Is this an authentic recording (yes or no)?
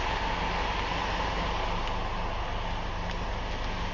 yes